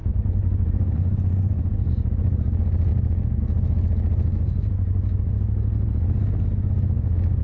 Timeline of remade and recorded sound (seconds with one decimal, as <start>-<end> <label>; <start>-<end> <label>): 0.0-1.9 remade; 1.9-4.3 recorded; 4.3-5.3 remade; 5.3-7.4 recorded

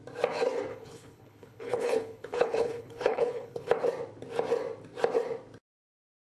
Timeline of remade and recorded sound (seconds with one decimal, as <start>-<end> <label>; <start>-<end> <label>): 0.0-0.7 recorded; 0.7-3.7 remade; 3.7-6.3 recorded

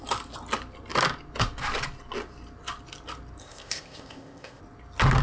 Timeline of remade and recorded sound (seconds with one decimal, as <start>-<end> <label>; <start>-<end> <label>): 0.0-3.4 recorded; 3.4-4.6 remade; 4.6-5.2 recorded

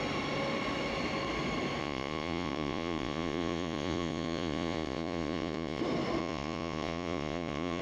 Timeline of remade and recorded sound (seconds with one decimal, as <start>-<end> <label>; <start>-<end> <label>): 0.0-1.8 recorded; 1.8-5.8 remade; 5.8-6.2 recorded; 6.2-7.8 remade

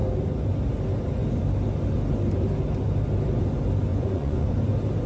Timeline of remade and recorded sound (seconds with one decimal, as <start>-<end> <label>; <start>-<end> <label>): 0.0-3.9 recorded; 3.9-4.5 remade; 4.5-5.1 recorded

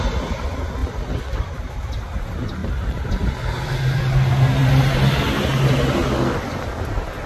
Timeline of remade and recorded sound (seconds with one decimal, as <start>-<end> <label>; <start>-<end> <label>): 0.0-7.3 recorded

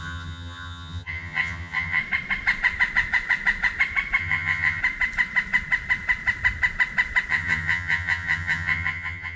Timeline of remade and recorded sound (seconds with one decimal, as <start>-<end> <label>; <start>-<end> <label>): 0.0-2.0 remade; 2.0-4.2 recorded; 4.2-4.8 remade; 4.8-7.3 recorded; 7.3-9.4 remade